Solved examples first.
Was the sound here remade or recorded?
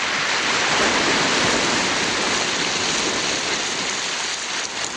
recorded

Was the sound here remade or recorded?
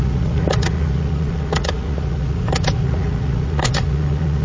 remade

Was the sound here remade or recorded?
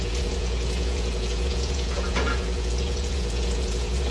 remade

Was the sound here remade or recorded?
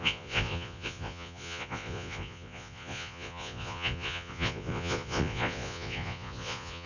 remade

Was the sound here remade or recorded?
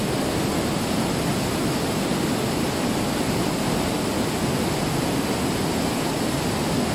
recorded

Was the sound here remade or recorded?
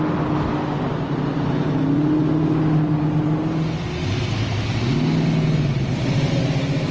recorded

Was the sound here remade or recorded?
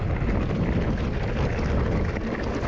recorded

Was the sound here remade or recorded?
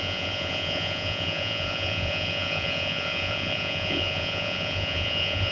remade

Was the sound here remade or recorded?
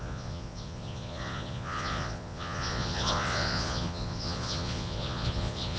remade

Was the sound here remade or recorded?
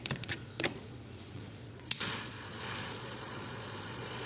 remade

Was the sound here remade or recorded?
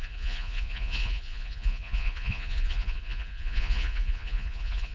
remade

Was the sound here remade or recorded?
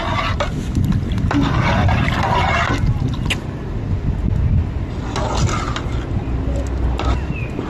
recorded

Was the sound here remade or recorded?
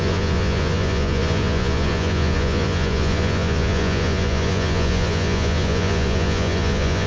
remade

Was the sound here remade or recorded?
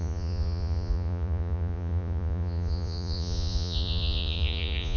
remade